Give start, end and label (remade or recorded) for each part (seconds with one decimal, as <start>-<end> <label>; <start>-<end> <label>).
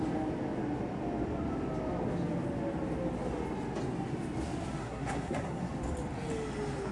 0.0-4.8 recorded; 4.8-5.7 remade; 5.7-6.9 recorded